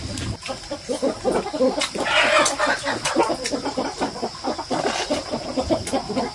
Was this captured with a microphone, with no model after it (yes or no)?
yes